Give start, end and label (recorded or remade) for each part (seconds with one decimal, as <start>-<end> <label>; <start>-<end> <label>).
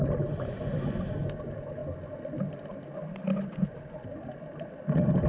0.0-5.3 recorded